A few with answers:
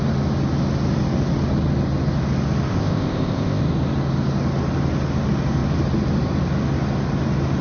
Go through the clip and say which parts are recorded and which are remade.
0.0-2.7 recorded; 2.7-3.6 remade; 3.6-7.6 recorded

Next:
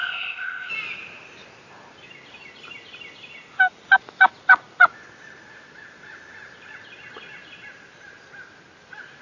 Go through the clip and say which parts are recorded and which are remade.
0.0-0.7 remade; 0.7-9.2 recorded

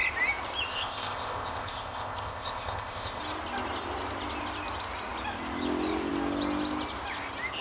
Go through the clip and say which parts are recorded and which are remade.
0.0-0.7 recorded; 0.7-3.2 remade; 3.2-7.6 recorded

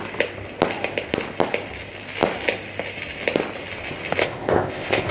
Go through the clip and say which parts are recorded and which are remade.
0.0-4.2 recorded; 4.2-5.1 remade

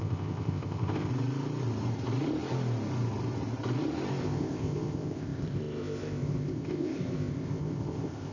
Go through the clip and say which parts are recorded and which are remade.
0.0-1.1 remade; 1.1-4.2 recorded; 4.2-8.3 remade

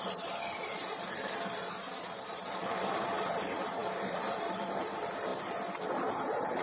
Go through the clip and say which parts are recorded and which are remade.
0.0-6.6 recorded

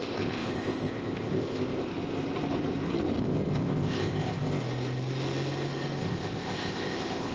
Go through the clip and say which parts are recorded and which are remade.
0.0-1.9 remade; 1.9-3.2 recorded; 3.2-4.6 remade; 4.6-6.0 recorded; 6.0-7.3 remade

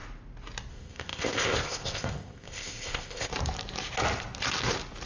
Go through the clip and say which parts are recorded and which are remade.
0.0-0.7 recorded; 0.7-3.3 remade; 3.3-5.1 recorded